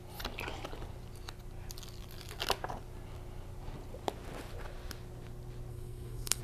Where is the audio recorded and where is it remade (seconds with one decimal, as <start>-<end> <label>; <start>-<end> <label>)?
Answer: 0.0-5.7 recorded; 5.7-6.4 remade